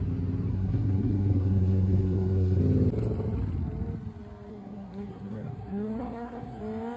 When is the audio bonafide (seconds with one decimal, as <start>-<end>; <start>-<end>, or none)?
0.0-0.5; 2.6-4.5; 6.6-7.0